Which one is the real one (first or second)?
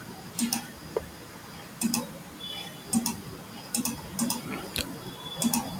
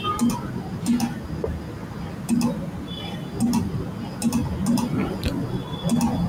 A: second